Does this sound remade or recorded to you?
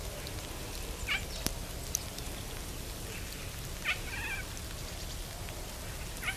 recorded